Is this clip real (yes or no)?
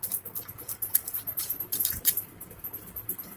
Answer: no